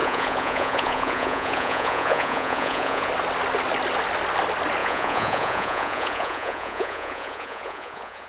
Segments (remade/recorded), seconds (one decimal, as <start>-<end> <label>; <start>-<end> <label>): 0.0-3.1 remade; 3.1-4.8 recorded; 4.8-8.3 remade